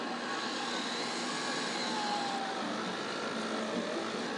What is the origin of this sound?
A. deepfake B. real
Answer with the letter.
B